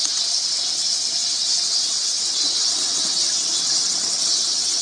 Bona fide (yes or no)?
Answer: no